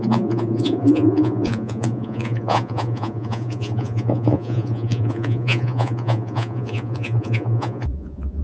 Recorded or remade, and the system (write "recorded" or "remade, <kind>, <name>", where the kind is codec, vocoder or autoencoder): remade, vocoder, Vocos